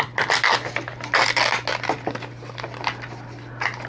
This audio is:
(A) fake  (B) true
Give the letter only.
B